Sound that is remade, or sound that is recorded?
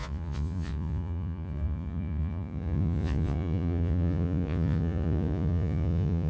remade